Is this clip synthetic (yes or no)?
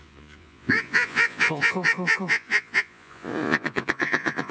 yes